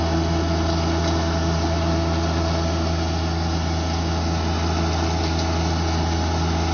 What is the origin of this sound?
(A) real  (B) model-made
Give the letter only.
A